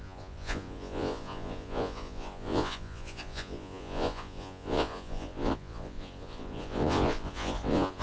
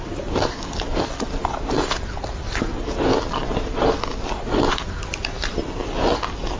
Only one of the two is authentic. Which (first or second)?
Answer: second